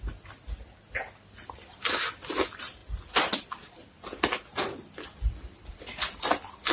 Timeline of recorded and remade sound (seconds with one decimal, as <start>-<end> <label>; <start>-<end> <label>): 0.0-6.7 recorded